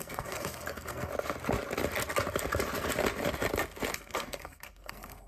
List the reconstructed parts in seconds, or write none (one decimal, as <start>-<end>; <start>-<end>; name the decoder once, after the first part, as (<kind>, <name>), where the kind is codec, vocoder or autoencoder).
0.0-1.1 (codec, SNAC); 3.9-5.3